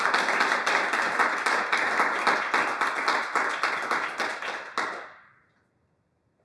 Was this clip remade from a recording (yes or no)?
no